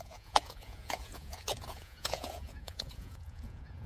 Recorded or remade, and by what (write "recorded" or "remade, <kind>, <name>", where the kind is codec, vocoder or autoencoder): remade, vocoder, Vocos